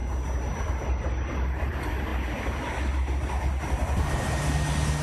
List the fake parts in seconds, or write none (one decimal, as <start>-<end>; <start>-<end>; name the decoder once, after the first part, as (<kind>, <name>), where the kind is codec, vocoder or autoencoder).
none